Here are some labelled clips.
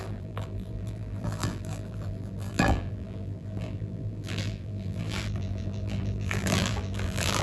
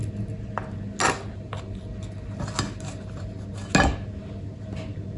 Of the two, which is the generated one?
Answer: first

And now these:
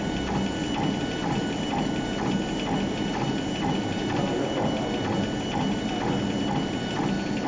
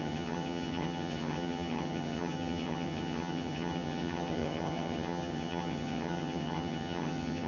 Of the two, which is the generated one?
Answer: second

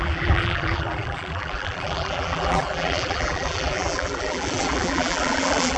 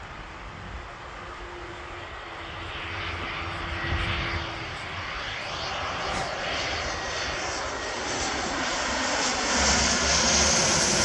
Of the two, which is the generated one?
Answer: first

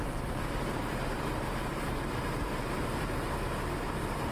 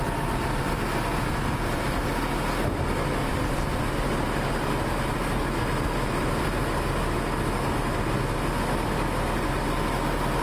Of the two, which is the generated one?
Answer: first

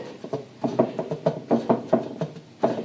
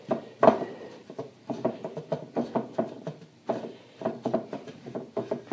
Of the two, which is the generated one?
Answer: second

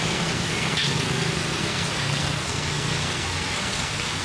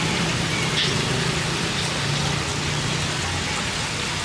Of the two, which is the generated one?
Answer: first